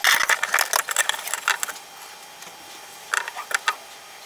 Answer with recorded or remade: recorded